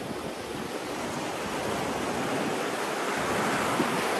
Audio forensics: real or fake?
fake